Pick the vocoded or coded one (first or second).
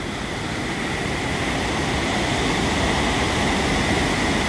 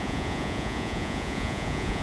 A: second